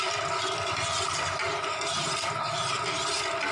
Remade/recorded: recorded